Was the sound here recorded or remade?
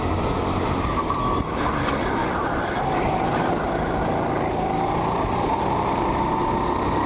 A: recorded